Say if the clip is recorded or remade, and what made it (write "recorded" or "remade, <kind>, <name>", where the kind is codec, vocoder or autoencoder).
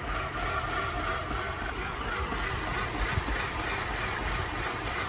recorded